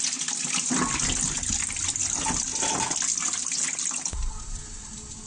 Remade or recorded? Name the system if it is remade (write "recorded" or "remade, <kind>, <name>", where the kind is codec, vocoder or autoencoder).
recorded